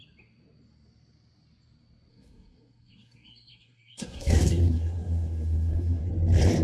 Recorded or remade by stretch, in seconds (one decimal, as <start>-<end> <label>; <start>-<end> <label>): 0.0-2.1 recorded; 2.1-6.1 remade; 6.1-6.6 recorded